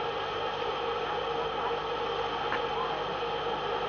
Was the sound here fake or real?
real